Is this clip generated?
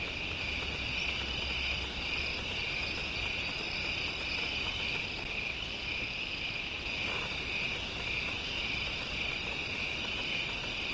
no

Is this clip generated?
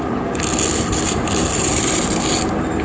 no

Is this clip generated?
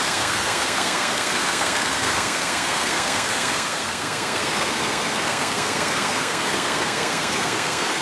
yes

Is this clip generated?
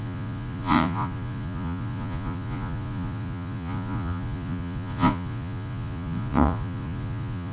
yes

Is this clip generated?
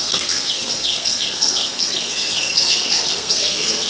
yes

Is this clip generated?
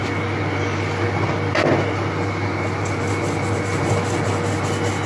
no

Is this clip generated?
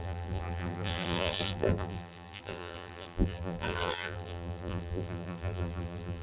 yes